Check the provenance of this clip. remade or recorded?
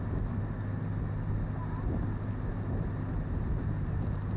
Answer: recorded